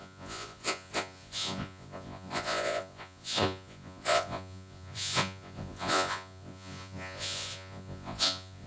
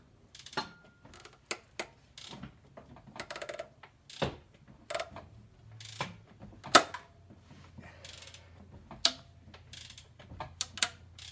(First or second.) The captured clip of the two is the second